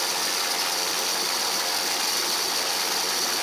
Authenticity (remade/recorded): recorded